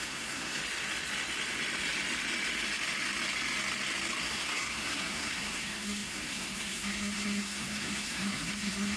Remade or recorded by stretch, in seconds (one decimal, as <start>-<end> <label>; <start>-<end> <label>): 0.0-0.6 remade; 0.6-4.2 recorded; 4.2-9.0 remade